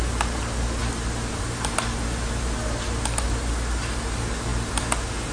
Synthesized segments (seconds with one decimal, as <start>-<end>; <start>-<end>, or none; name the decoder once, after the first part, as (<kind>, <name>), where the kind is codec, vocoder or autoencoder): none